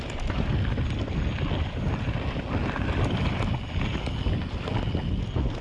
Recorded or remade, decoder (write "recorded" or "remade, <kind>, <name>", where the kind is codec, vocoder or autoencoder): recorded